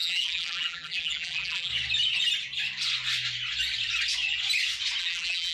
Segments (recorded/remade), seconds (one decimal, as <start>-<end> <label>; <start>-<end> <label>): 0.0-1.7 remade; 1.7-5.0 recorded; 5.0-5.5 remade